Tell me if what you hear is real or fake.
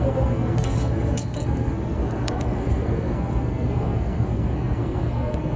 fake